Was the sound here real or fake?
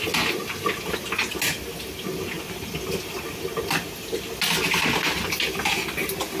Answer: real